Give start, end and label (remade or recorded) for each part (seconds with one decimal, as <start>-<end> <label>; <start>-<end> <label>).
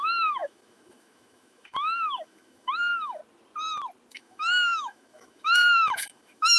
0.0-3.2 remade; 3.2-4.1 recorded; 4.1-6.6 remade